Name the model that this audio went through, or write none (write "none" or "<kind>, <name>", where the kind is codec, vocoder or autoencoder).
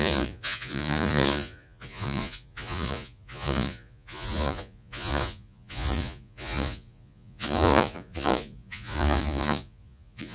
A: vocoder, Vocos